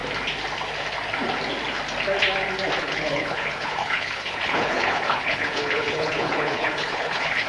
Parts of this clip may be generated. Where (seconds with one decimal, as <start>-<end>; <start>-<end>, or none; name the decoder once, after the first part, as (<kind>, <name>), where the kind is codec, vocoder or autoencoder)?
2.8-7.5 (codec, HILCodec)